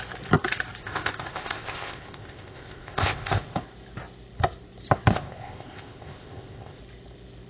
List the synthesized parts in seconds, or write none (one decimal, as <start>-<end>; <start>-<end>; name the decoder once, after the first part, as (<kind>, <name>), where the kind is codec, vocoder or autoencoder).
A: 0.8-3.6 (codec, ZipCodec); 5.1-6.8